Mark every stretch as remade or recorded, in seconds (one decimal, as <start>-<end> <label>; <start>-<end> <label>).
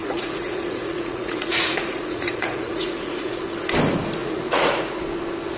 0.0-3.4 remade; 3.4-4.2 recorded; 4.2-5.0 remade; 5.0-5.6 recorded